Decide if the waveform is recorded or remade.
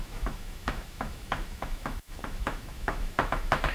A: remade